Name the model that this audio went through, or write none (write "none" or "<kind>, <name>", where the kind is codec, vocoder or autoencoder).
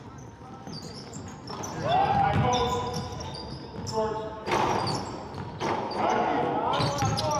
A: none